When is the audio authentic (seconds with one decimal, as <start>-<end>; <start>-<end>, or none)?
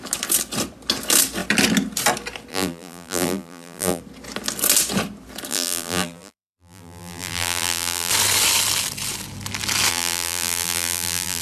0.0-2.5; 4.0-5.5; 8.1-9.9